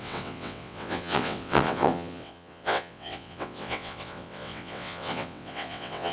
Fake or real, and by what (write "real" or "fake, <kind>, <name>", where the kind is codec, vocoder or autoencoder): fake, vocoder, WaveNeXt